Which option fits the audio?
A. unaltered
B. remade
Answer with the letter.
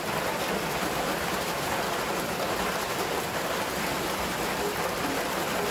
B